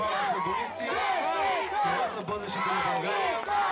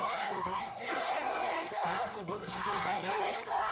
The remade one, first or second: second